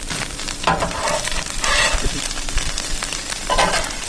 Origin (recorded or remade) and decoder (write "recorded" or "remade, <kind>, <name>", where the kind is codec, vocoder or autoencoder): remade, vocoder, BigVGAN v2